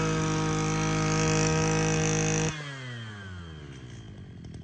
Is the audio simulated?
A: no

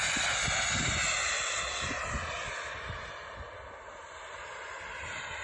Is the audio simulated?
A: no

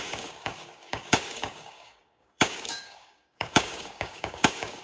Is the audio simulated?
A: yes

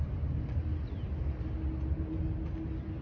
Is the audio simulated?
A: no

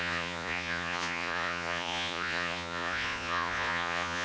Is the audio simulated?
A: yes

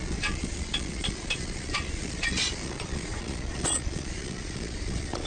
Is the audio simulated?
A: yes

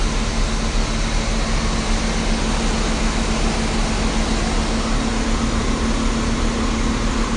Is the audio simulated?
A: no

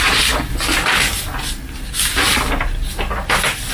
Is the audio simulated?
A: no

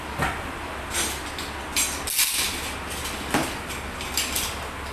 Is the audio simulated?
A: no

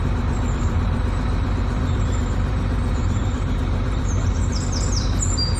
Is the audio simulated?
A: yes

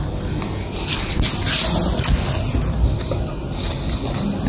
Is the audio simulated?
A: no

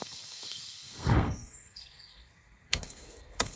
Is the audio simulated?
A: yes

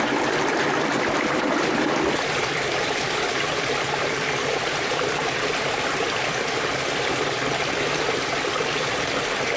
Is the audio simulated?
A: yes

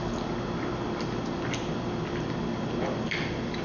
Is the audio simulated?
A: no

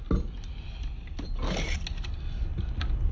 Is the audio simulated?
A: no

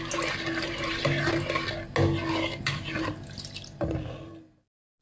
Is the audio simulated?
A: no